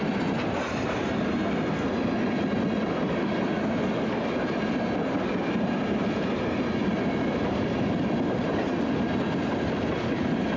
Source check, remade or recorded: recorded